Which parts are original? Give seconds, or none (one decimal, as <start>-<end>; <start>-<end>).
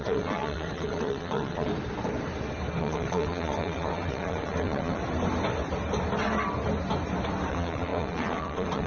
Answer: 1.7-2.8; 5.0-7.5